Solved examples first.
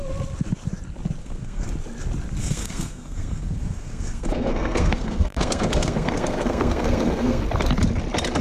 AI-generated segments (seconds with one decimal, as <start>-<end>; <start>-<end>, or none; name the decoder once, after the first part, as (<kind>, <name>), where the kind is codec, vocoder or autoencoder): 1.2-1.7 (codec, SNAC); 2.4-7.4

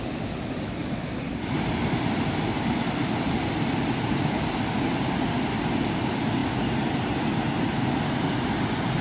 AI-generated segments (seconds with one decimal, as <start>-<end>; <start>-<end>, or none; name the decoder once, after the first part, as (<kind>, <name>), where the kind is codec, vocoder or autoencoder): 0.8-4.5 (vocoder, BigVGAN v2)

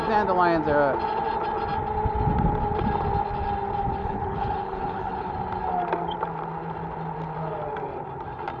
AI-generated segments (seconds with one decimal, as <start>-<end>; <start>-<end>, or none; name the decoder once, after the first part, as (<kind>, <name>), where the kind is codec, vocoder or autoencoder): 4.0-5.3 (codec, HILCodec)